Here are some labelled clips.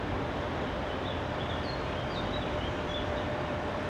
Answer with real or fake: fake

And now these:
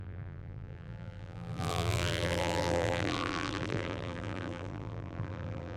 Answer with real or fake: fake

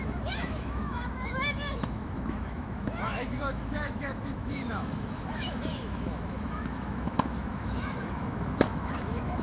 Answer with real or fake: fake